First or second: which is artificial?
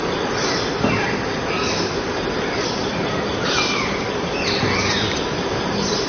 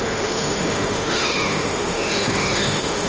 second